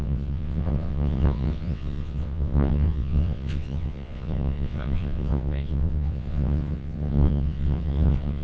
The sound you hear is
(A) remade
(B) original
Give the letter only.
A